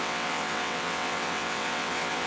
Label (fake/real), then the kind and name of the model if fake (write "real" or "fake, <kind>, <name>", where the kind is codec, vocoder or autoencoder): fake, vocoder, WaveNeXt